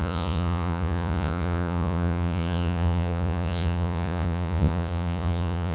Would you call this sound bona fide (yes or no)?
no